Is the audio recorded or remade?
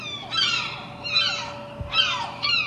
recorded